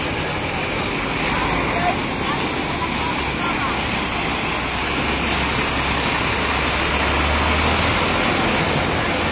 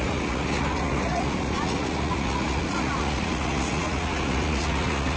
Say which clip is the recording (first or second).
first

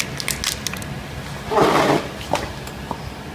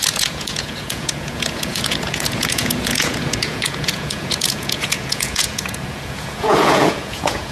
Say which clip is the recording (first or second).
first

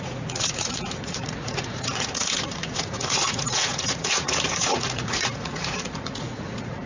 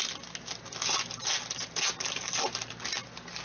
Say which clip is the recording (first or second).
second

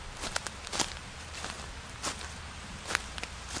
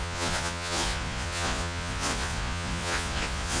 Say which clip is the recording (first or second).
first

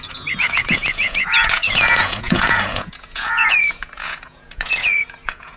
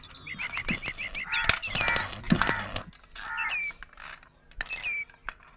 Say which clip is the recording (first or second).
second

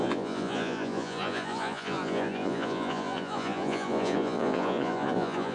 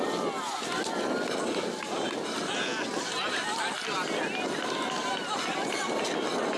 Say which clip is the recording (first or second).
second